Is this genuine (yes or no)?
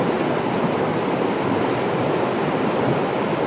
yes